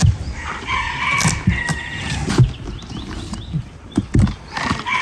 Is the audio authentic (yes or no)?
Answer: yes